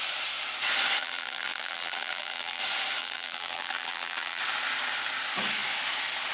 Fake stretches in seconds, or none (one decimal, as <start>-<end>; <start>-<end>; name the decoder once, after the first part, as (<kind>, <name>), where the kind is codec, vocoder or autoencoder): 1.0-2.6 (vocoder, BigVGAN v2); 3.0-4.4